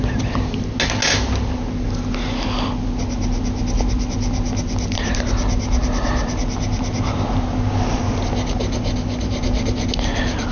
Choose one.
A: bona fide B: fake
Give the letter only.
A